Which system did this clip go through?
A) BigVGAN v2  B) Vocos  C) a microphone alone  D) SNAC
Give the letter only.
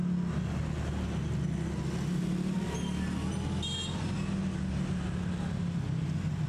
C